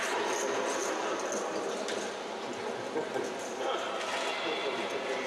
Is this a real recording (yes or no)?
yes